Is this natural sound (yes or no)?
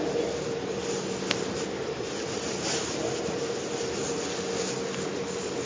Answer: yes